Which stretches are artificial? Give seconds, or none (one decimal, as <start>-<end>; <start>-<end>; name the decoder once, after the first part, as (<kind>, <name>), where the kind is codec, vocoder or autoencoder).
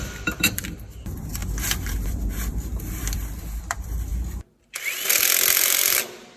0.0-1.4 (vocoder, BigVGAN v2); 2.0-4.1